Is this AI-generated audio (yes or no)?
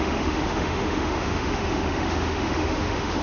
yes